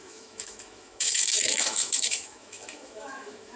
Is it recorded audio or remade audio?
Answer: remade